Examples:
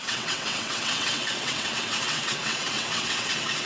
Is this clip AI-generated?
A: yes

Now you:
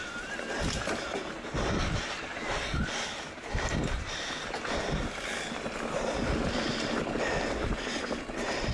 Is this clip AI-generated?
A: no